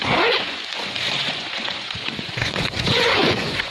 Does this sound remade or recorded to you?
remade